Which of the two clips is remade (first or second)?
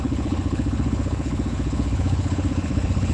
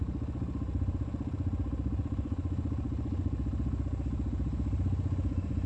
first